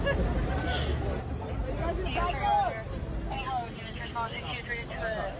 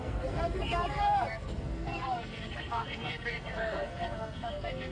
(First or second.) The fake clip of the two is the second